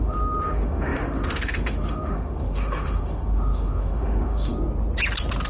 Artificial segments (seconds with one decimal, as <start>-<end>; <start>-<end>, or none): 0.0-4.5